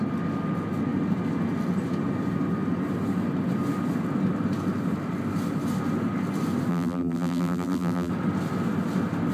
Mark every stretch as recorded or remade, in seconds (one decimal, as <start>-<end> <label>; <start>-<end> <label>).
0.0-6.7 recorded; 6.7-8.1 remade; 8.1-9.3 recorded